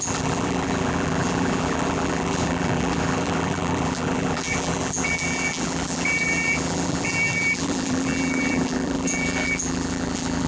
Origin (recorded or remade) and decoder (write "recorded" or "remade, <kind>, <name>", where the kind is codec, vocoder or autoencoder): remade, vocoder, BigVGAN v2